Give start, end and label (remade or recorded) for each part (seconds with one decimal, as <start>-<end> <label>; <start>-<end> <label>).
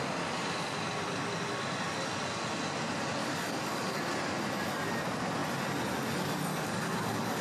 0.0-3.2 recorded; 3.2-4.0 remade; 4.0-6.5 recorded; 6.5-7.4 remade